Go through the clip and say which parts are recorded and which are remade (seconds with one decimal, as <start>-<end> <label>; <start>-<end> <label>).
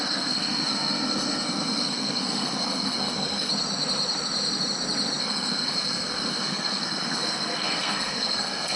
0.0-3.5 remade; 3.5-5.2 recorded; 5.2-8.8 remade